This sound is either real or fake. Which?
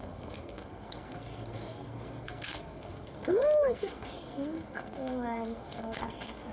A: fake